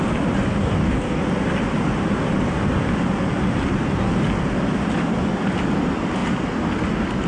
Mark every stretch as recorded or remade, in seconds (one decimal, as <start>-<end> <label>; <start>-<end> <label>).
0.0-0.6 recorded; 0.6-1.2 remade; 1.2-7.3 recorded